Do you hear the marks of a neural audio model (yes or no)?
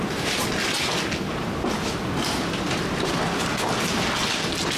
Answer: no